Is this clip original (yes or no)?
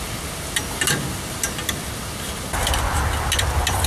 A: yes